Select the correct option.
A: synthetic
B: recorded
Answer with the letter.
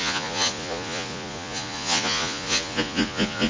A